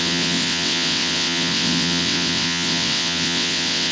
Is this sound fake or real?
fake